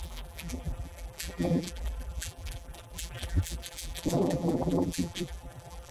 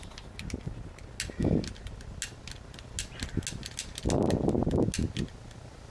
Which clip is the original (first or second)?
second